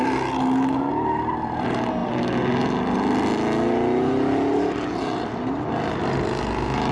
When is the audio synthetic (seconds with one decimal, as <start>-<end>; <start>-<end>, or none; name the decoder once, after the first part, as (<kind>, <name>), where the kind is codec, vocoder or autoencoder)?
none